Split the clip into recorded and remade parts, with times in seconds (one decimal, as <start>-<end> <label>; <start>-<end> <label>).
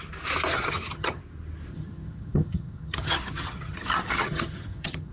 0.0-0.5 recorded; 0.5-1.2 remade; 1.2-1.7 recorded; 1.7-5.1 remade